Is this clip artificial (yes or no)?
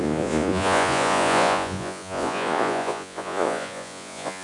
yes